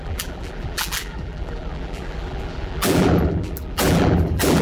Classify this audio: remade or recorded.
remade